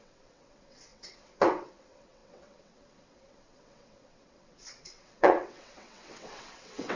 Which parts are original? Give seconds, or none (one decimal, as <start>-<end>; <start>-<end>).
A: none